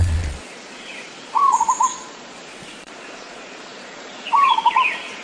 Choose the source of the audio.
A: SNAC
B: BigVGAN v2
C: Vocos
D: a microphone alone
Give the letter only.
C